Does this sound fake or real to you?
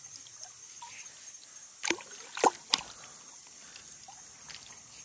real